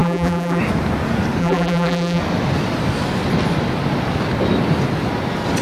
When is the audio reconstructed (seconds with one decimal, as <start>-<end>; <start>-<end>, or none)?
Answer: 0.0-0.6; 1.4-2.2